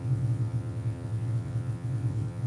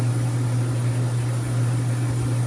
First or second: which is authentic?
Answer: second